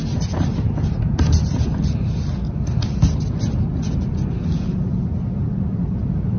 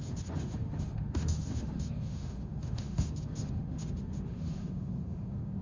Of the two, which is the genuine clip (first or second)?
first